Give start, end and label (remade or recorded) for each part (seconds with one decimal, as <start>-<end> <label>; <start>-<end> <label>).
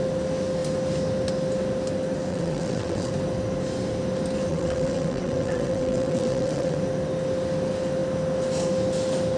0.0-2.3 recorded; 2.3-3.1 remade; 3.1-4.5 recorded; 4.5-6.8 remade; 6.8-9.4 recorded